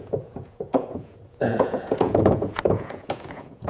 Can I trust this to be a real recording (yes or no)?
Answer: no